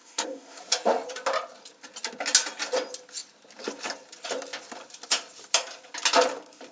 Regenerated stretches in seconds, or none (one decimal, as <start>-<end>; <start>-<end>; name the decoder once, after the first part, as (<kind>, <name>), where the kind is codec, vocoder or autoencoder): 0.0-0.6 (codec, ZipCodec)